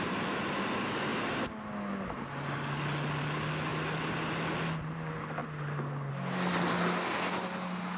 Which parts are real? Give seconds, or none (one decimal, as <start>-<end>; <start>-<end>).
0.0-8.0

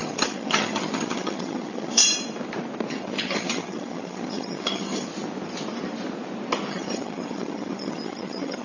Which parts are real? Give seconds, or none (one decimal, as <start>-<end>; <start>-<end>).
2.0-2.9; 5.1-6.7

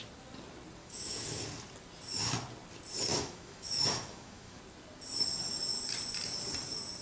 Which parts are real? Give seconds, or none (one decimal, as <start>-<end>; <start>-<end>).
0.0-0.8; 1.4-3.1; 4.6-7.0

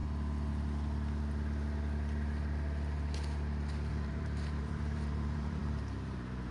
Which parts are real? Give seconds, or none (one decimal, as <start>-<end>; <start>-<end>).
0.0-3.9

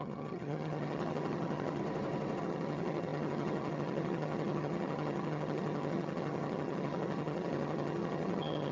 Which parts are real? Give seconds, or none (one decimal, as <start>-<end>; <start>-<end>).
1.8-2.4

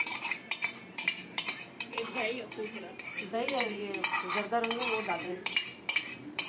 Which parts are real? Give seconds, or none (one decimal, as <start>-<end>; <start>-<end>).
3.8-5.1

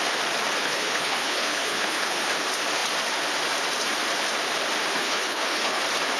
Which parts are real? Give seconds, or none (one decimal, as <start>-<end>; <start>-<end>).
0.0-0.6; 2.3-4.9; 5.8-6.2

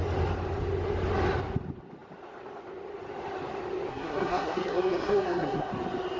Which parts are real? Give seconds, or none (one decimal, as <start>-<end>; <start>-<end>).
0.0-3.9; 5.7-6.2